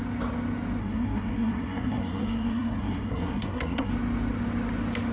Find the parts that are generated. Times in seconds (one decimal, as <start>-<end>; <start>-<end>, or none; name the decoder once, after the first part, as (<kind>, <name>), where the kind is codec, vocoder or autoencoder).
0.8-3.9 (codec, SNAC)

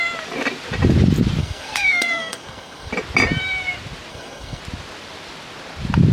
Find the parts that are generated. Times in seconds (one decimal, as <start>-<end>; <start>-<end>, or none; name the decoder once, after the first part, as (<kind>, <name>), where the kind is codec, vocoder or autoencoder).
1.4-2.9 (codec, SNAC); 4.1-4.6

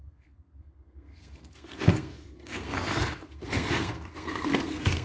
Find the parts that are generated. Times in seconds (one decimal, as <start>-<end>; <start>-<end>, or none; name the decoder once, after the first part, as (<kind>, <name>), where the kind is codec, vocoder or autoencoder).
0.0-5.0 (codec, SNAC)

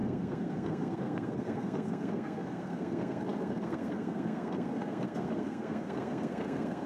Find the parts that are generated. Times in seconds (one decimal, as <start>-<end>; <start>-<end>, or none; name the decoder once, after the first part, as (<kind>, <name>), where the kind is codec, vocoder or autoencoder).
0.0-6.9 (codec, SNAC)

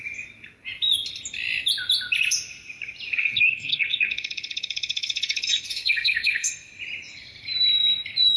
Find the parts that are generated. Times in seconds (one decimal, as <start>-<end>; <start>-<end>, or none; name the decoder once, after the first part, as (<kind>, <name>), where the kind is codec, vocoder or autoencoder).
3.2-6.7 (codec, SNAC)

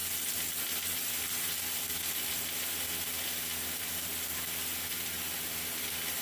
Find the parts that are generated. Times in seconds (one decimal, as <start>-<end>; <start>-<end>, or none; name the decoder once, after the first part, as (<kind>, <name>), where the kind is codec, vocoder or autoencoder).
none